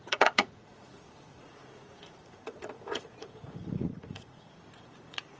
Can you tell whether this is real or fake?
fake